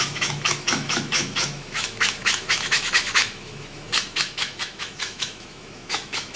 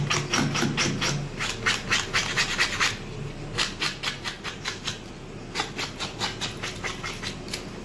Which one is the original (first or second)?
second